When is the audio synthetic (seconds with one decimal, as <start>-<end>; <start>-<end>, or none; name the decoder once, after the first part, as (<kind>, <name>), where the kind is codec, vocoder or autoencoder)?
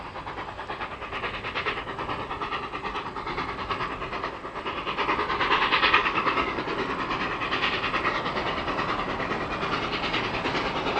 6.0-6.6 (codec, DAC)